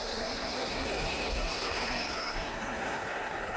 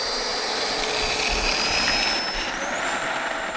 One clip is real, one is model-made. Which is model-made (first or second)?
first